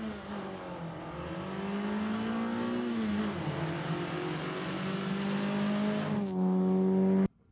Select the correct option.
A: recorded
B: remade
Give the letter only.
A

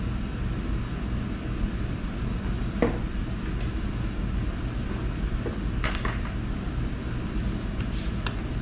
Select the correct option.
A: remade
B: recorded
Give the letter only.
B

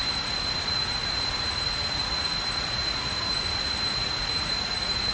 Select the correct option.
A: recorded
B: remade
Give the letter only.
B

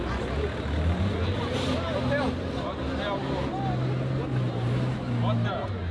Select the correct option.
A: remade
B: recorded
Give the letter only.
B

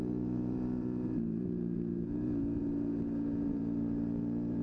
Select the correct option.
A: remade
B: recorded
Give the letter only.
A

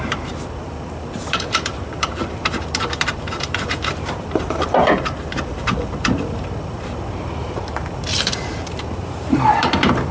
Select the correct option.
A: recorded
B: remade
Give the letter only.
B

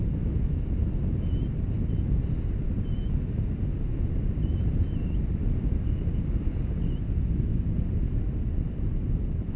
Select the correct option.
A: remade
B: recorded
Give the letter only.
B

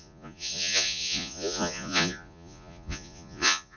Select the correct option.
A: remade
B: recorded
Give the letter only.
A